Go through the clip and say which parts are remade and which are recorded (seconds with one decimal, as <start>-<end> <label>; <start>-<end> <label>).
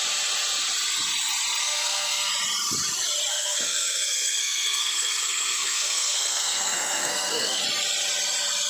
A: 0.0-1.6 recorded; 1.6-2.3 remade; 2.3-3.3 recorded; 3.3-7.6 remade; 7.6-8.7 recorded